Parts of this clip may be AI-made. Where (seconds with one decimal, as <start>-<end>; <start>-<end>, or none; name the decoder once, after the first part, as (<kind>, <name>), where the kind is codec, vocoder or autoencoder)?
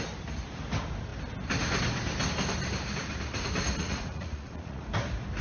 3.8-4.8 (vocoder, Vocos)